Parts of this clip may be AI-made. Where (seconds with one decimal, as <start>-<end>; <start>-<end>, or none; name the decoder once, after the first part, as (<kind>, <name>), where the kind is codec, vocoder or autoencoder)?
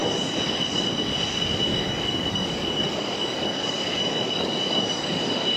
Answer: 1.7-5.1 (codec, DAC)